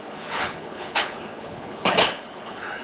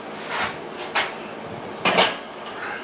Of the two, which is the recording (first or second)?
second